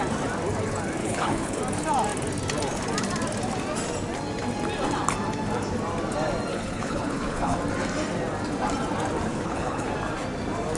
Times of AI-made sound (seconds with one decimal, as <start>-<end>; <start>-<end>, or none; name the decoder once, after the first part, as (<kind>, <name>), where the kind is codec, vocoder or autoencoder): 1.0-1.6 (codec, HILCodec); 6.5-7.6; 9.3-9.9